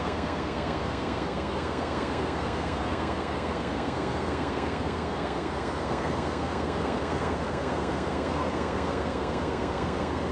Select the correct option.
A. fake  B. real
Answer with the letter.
A